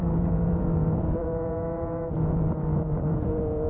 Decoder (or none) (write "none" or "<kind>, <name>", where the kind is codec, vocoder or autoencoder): vocoder, Vocos